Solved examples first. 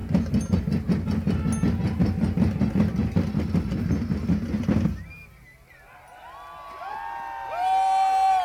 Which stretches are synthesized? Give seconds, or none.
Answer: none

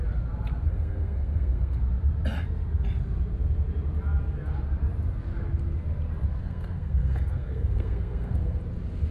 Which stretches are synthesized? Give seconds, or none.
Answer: 0.7-1.8 (codec, SNAC); 6.4-8.6

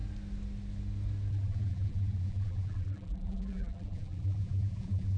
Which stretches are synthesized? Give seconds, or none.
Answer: 1.3-5.2 (vocoder, BigVGAN v2)

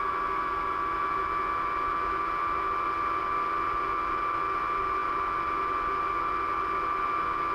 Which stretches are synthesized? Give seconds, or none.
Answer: none